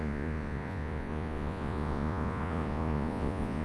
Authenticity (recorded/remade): remade